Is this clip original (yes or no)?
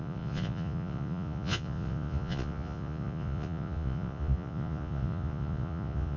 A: no